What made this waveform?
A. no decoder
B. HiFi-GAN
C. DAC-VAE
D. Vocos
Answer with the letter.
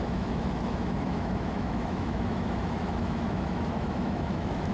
C